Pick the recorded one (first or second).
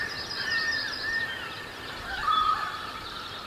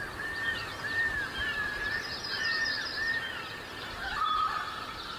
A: second